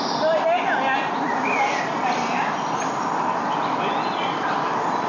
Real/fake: real